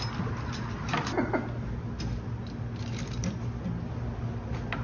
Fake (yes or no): no